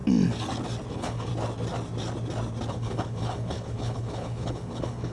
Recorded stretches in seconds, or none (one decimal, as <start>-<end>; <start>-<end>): 0.0-0.9; 1.3-2.7